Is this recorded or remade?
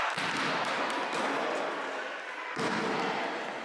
recorded